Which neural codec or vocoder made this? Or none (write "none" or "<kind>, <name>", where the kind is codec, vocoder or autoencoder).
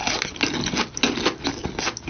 none